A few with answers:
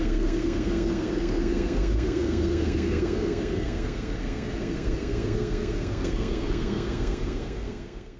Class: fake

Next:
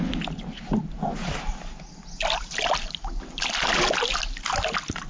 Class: real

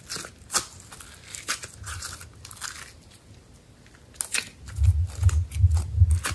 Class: real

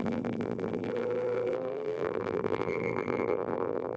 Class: fake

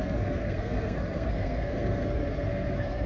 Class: fake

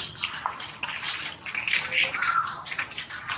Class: real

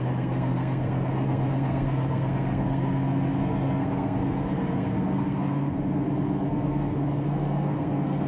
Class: fake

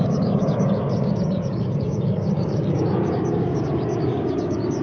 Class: fake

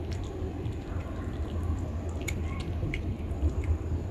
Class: fake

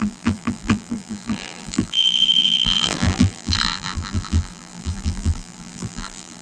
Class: fake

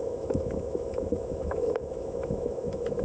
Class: fake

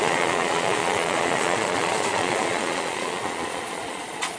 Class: fake